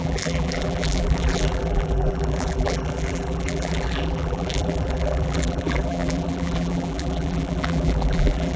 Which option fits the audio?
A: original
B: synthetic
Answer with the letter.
B